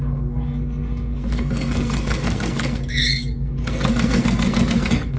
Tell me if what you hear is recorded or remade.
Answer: remade